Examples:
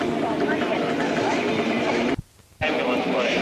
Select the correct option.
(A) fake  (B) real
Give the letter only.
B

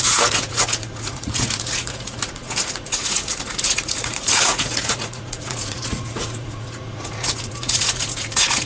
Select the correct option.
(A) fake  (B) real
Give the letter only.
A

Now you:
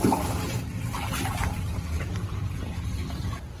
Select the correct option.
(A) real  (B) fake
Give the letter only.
A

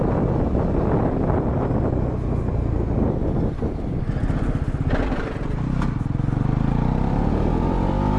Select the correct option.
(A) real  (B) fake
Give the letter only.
A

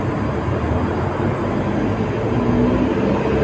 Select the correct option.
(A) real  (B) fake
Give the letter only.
A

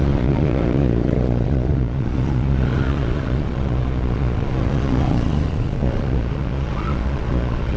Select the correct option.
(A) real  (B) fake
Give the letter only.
B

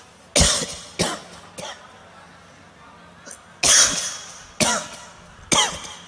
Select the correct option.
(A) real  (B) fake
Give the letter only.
A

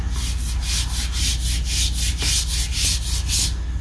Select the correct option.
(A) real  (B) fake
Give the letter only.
A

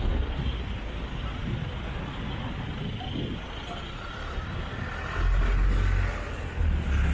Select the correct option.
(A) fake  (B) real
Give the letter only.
B